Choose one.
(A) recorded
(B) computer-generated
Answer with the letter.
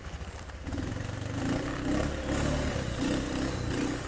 B